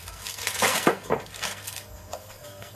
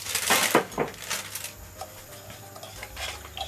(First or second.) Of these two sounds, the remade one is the first